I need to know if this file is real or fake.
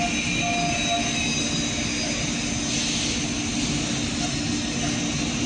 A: real